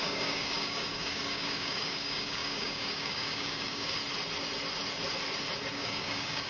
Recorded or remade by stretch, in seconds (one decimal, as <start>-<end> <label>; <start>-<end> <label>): 0.0-4.0 remade; 4.0-5.7 recorded; 5.7-6.5 remade